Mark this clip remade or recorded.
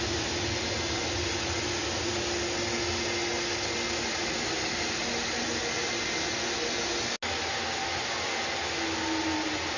recorded